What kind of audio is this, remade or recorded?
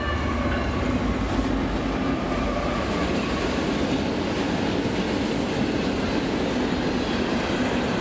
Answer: recorded